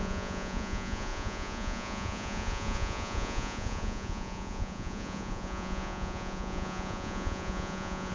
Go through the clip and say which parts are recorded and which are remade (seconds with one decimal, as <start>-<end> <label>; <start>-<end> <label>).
0.0-8.1 remade